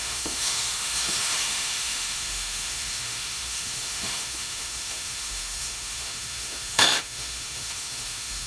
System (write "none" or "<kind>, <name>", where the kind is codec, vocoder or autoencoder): autoencoder, DAC-VAE